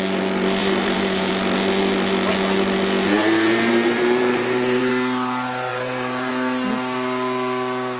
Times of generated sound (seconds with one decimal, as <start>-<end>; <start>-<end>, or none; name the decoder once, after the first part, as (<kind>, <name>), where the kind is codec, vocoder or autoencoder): 0.6-1.3 (vocoder, BigVGAN v2); 3.2-4.9; 5.7-6.3